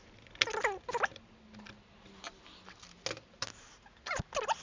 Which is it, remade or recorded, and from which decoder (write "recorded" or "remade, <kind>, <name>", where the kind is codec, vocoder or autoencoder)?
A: recorded